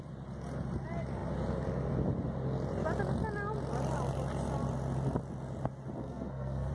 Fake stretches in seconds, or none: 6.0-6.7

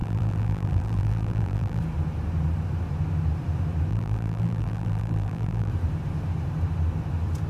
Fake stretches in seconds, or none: 0.0-1.8; 3.9-5.7

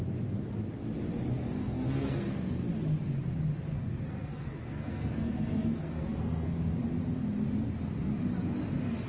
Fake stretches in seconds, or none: 1.6-2.7; 3.7-6.5

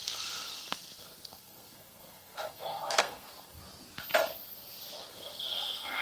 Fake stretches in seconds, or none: 0.0-3.6; 5.1-6.0

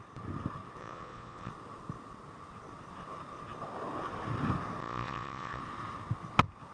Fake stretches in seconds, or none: 0.8-1.5; 4.8-5.6